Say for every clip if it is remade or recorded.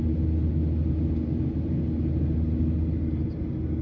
recorded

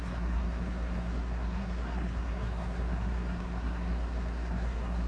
remade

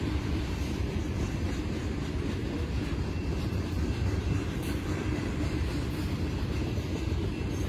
remade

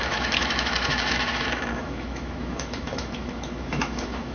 remade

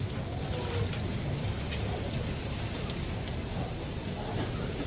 recorded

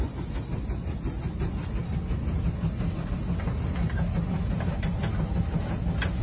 recorded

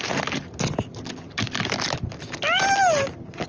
recorded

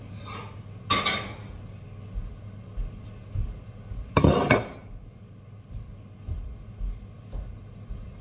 recorded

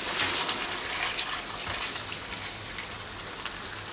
recorded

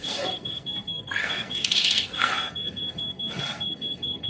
remade